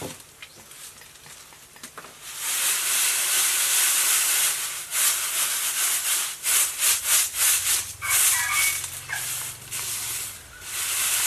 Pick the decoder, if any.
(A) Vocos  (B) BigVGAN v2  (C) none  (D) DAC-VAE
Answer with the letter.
C